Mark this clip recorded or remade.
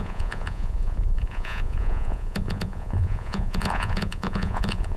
remade